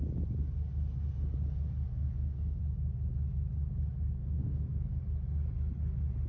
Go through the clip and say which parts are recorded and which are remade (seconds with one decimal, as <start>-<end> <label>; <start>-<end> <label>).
0.0-1.9 recorded; 1.9-2.6 remade; 2.6-4.2 recorded; 4.2-5.0 remade; 5.0-6.3 recorded